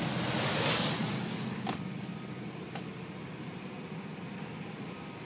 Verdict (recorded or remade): recorded